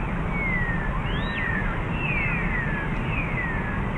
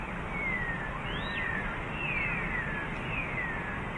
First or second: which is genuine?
first